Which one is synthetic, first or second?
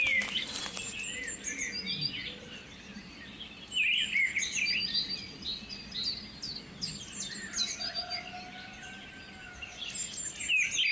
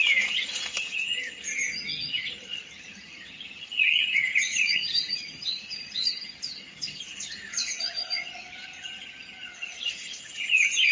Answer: second